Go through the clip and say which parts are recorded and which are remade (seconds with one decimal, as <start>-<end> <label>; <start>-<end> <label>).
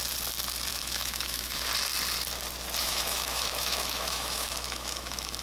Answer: 0.0-0.7 recorded; 0.7-1.7 remade; 1.7-2.8 recorded; 2.8-5.4 remade